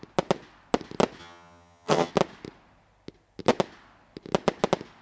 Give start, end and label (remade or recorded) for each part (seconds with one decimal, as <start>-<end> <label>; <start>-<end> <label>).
0.0-1.2 recorded; 1.2-2.1 remade; 2.1-5.0 recorded